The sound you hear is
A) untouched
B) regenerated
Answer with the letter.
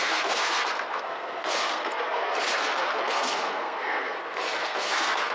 B